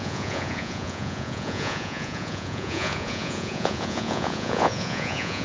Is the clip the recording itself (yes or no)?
no